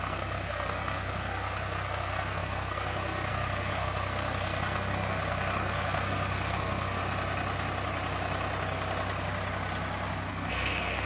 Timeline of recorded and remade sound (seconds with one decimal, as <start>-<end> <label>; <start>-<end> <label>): 0.0-7.0 remade; 7.0-10.3 recorded; 10.3-11.1 remade